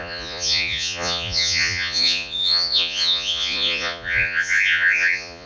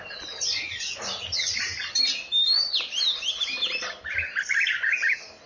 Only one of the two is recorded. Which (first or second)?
second